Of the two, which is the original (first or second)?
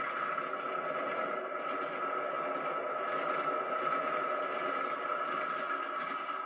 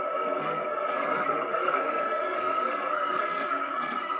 first